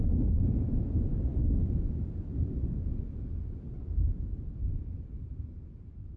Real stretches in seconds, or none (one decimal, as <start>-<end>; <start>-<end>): 0.0-6.2